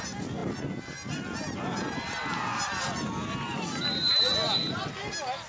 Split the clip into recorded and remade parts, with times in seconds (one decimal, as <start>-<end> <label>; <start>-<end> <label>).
0.0-5.5 recorded